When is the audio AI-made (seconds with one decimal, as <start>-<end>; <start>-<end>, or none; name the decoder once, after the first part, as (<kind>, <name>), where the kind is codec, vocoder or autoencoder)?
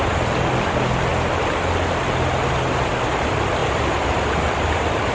0.0-1.1 (vocoder, BigVGAN v2); 2.9-5.1